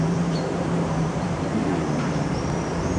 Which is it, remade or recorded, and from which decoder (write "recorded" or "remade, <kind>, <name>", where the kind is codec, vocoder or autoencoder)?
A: remade, vocoder, BigVGAN v2